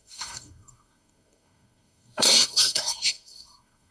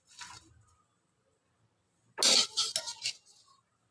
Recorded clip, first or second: second